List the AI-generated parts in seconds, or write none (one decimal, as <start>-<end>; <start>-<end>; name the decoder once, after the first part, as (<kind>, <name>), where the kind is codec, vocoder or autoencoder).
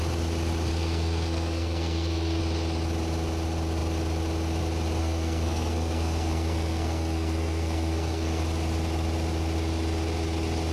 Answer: 0.7-2.4 (codec, SNAC); 5.0-8.4